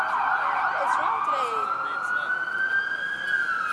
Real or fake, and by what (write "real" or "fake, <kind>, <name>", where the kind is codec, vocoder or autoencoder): real